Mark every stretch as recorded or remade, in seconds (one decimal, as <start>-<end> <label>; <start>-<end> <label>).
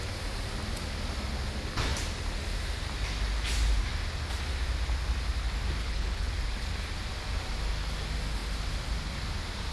0.0-5.8 recorded; 5.8-6.3 remade; 6.3-9.7 recorded